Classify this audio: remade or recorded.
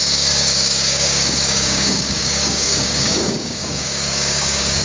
remade